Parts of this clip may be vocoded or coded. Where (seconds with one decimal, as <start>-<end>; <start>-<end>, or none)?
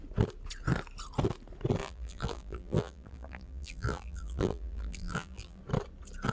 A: 1.8-5.6